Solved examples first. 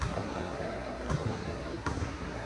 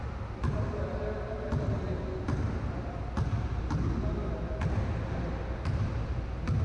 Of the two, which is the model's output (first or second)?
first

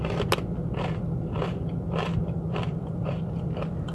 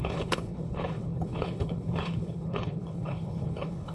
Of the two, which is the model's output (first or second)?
second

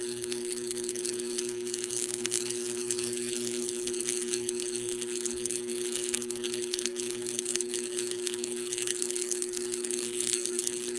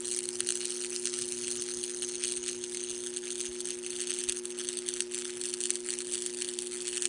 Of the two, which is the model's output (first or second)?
first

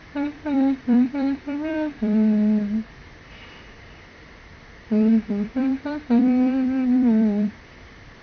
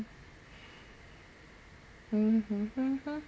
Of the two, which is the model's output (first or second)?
first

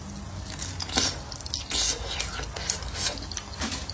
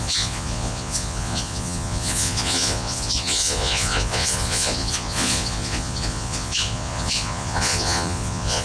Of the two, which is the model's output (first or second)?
second